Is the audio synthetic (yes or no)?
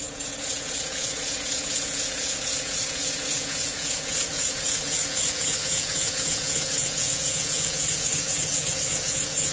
yes